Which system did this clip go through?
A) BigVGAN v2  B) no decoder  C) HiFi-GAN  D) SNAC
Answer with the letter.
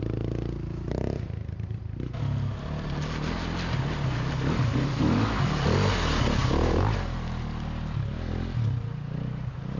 B